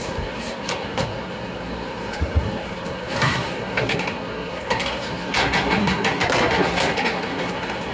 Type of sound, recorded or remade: remade